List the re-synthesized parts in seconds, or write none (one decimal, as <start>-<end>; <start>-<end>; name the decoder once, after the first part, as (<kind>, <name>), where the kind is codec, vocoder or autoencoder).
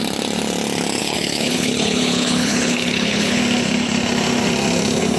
1.0-3.4 (codec, HILCodec)